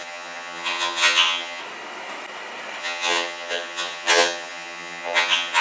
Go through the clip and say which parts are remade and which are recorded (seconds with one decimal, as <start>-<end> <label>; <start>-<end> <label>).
0.0-1.6 remade; 1.6-2.8 recorded; 2.8-5.6 remade